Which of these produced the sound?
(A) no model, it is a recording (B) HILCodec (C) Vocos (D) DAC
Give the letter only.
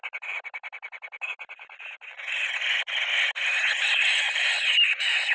A